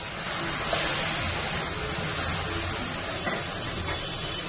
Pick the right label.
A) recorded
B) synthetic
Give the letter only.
A